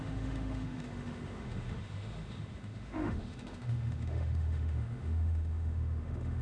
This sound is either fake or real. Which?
fake